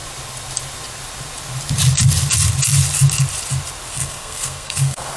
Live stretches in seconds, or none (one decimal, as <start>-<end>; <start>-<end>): 0.0-3.9